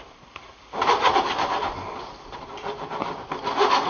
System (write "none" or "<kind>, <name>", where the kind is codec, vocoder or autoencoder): none